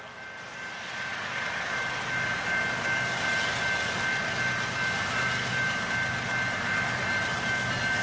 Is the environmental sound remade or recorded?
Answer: recorded